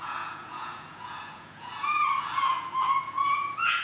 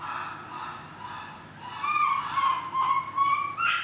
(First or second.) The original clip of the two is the second